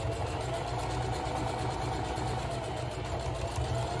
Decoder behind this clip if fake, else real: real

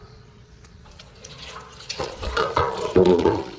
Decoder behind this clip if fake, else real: fake, vocoder, Vocos